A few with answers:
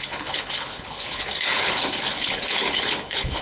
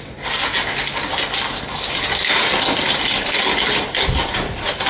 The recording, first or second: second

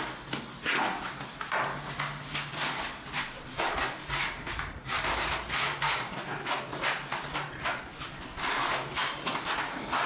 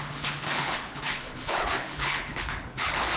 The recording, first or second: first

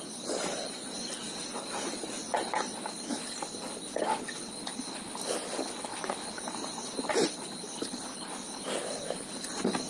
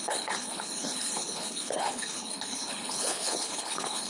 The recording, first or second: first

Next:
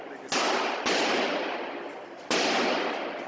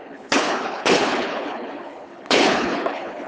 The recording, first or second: first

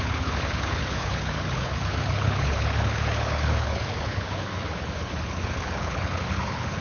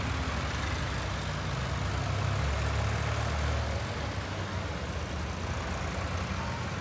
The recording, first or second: second